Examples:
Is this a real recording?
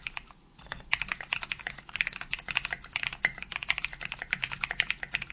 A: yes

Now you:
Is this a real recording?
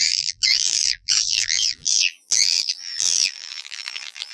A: no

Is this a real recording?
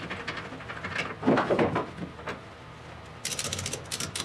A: yes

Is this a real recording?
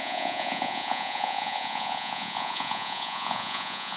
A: no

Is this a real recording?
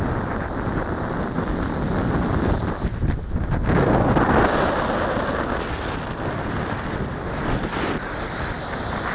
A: yes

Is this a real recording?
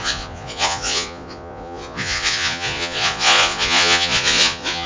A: no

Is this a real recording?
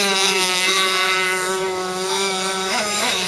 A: no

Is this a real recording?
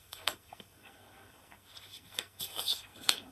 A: no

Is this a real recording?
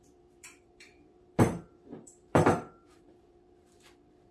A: no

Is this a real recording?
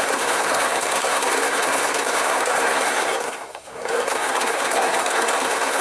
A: no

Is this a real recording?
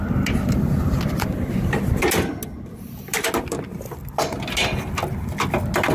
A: yes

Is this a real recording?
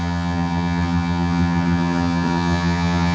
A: no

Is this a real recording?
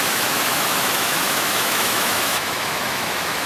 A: no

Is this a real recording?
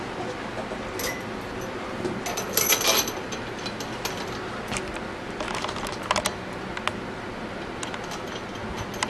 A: yes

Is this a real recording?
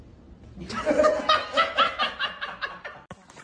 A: yes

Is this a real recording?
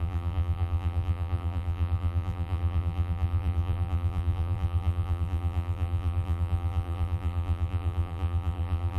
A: no